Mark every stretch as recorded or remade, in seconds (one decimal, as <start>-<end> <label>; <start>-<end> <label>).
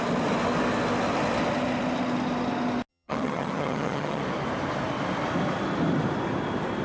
0.0-2.9 recorded; 2.9-4.2 remade; 4.2-6.8 recorded